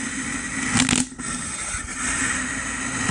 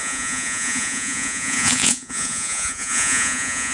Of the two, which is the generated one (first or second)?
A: second